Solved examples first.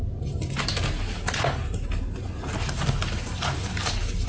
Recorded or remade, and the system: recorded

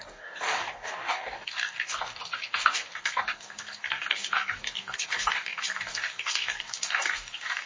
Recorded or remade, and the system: remade, codec, DAC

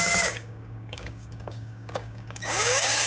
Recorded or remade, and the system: remade, codec, DAC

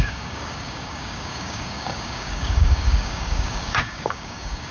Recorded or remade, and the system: remade, codec, DAC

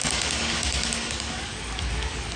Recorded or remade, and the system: remade, codec, DAC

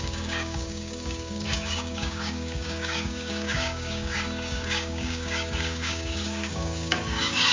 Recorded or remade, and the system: remade, codec, DAC